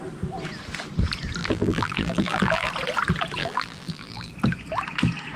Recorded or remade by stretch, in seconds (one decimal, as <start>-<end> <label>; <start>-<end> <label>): 0.0-1.4 recorded; 1.4-2.7 remade; 2.7-3.4 recorded; 3.4-4.3 remade; 4.3-5.4 recorded

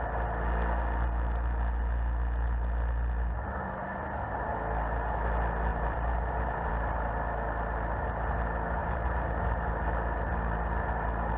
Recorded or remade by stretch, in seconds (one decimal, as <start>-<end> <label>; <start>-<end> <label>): 0.0-5.7 recorded; 5.7-6.7 remade; 6.7-8.8 recorded; 8.8-9.7 remade; 9.7-11.4 recorded